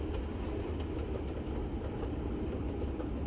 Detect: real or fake real